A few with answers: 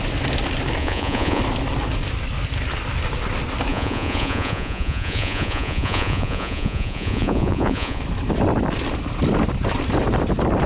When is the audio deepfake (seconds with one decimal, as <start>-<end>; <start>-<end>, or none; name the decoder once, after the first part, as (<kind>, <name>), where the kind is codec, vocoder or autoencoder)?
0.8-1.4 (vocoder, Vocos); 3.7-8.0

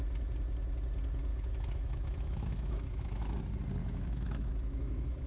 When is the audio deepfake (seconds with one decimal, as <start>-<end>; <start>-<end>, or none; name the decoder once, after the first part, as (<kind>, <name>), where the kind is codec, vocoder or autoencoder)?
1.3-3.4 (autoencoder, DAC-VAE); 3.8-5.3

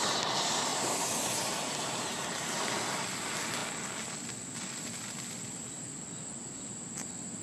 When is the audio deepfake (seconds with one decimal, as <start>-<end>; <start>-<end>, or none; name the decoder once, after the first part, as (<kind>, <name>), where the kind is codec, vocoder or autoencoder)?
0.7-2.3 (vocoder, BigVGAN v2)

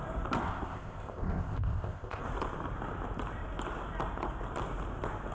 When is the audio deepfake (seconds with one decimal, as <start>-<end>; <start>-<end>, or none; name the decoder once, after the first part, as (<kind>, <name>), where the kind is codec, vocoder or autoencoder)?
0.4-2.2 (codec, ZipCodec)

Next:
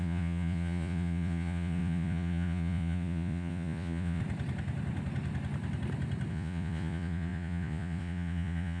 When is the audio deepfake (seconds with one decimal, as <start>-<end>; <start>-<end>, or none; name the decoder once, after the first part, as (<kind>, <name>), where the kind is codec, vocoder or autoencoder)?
0.0-4.2 (vocoder, Vocos); 6.3-8.8